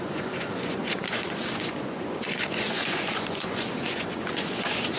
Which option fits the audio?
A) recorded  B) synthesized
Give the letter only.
B